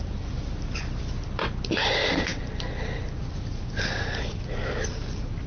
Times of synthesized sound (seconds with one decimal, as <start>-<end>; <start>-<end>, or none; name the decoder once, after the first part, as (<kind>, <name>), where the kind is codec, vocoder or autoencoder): none